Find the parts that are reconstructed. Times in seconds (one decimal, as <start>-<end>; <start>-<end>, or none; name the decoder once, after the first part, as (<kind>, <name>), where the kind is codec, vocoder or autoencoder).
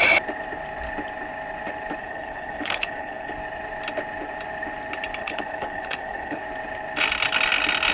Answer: 2.0-3.3 (codec, HILCodec); 5.2-6.4